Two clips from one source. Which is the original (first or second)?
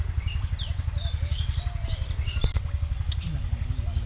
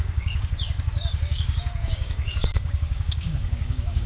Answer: first